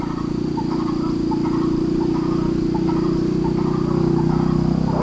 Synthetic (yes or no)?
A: no